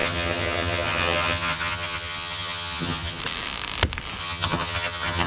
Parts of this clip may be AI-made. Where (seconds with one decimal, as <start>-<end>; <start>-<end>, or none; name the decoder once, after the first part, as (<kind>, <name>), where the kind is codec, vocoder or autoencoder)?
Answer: 0.0-3.2 (vocoder, HiFi-GAN); 4.2-5.3